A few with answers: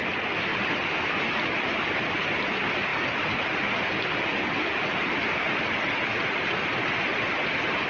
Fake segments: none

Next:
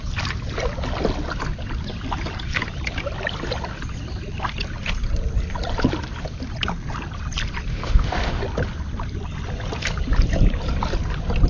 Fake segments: 7.7-8.4 (autoencoder, DAC-VAE)

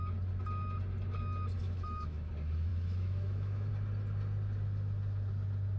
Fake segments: 1.6-2.3 (autoencoder, DAC-VAE); 2.7-3.7

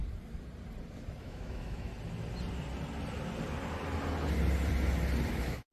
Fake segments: 1.2-1.9 (autoencoder, DAC-VAE); 5.3-5.7

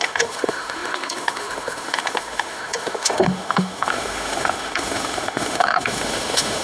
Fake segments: 0.0-6.6 (autoencoder, DAC-VAE)

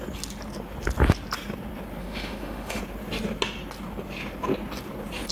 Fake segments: 2.0-2.8 (autoencoder, DAC-VAE)

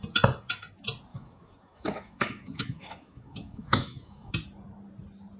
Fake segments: 1.1-4.3 (autoencoder, DAC-VAE)